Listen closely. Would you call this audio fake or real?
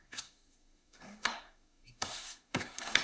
fake